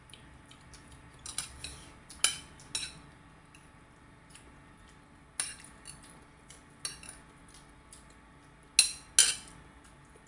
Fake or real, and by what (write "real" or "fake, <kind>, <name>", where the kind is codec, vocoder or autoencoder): real